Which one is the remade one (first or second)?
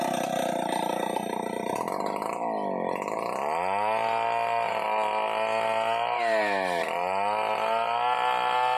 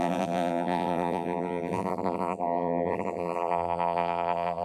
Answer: second